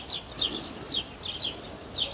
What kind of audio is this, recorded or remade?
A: recorded